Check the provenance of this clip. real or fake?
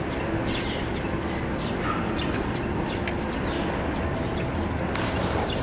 real